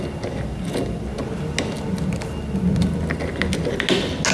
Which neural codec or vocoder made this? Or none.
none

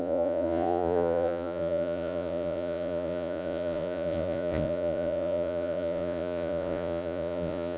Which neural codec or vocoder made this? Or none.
vocoder, Vocos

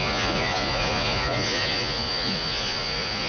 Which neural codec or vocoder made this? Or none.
vocoder, Vocos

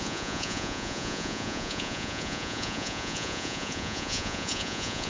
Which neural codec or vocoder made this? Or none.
vocoder, Vocos